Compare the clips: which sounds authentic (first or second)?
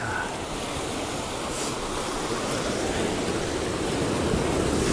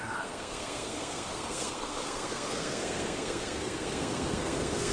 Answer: first